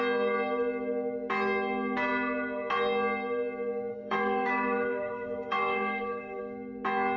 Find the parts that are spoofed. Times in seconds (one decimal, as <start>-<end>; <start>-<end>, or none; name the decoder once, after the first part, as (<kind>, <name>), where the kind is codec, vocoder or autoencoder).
3.9-6.4 (codec, DAC)